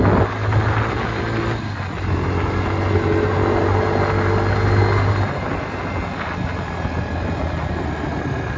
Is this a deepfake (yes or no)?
no